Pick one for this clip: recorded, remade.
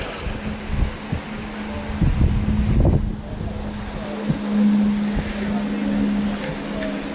recorded